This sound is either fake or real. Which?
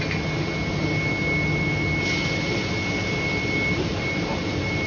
real